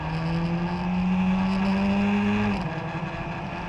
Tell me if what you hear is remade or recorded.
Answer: recorded